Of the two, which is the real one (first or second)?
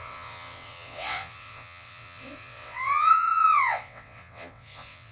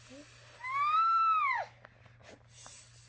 second